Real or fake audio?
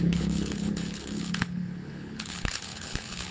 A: fake